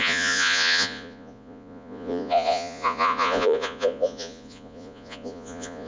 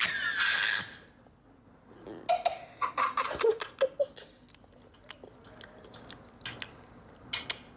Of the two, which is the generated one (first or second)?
first